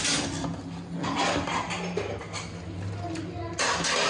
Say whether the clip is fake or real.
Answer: real